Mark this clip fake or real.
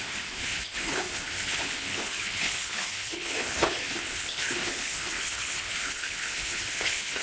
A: fake